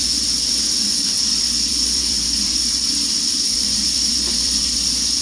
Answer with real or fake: fake